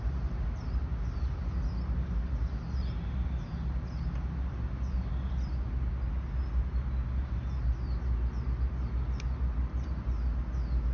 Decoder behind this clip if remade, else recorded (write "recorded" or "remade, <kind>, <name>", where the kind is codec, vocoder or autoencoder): recorded